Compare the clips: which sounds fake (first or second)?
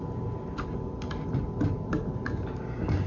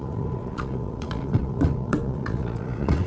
second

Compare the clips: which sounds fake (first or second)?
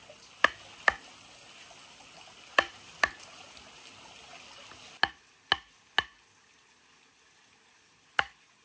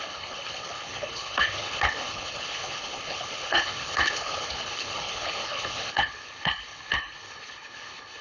second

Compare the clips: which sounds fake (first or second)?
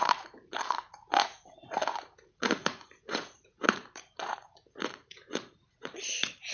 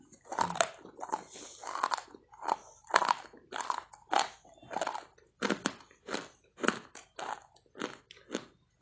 first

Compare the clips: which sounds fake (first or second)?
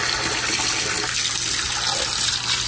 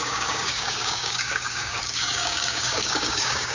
second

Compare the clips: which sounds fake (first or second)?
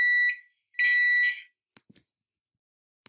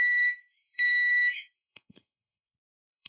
second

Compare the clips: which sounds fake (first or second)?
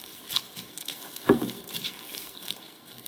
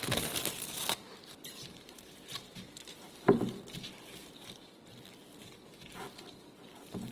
first